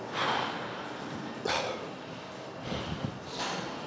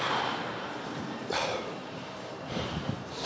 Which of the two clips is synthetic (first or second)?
second